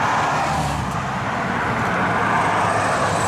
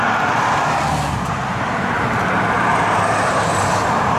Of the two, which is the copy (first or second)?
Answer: second